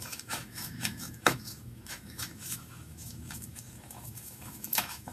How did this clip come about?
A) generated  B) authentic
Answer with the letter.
A